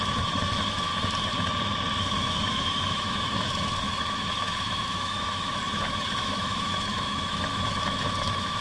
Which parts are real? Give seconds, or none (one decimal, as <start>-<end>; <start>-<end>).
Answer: 0.9-2.0